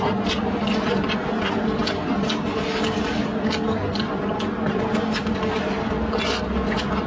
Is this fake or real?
real